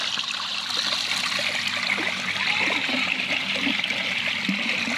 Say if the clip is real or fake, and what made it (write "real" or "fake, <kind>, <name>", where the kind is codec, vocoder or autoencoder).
real